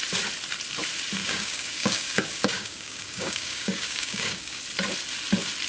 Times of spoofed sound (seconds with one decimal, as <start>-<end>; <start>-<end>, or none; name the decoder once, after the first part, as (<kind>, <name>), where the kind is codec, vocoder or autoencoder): 1.2-4.6 (codec, DAC)